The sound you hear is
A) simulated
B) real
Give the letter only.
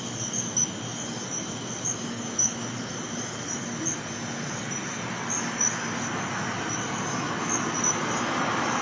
B